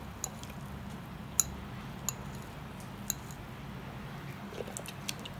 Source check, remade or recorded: recorded